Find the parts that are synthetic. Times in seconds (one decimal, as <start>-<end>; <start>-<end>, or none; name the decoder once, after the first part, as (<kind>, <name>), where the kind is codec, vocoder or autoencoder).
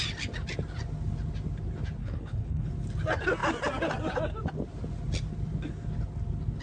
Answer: 2.0-2.7 (codec, HILCodec)